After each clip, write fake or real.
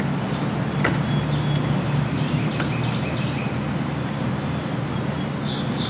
real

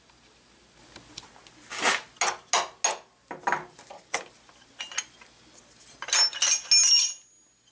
real